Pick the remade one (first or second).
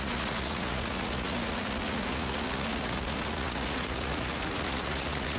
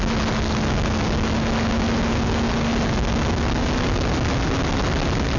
first